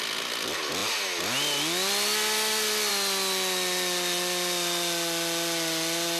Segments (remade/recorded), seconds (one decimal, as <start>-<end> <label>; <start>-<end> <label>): 0.0-6.2 recorded